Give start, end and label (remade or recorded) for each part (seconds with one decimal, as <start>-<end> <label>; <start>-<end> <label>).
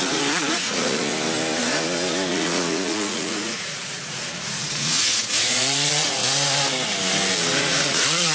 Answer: 0.0-1.1 remade; 1.1-2.3 recorded; 2.3-6.2 remade; 6.2-7.6 recorded; 7.6-8.3 remade